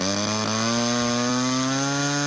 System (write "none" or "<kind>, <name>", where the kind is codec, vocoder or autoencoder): none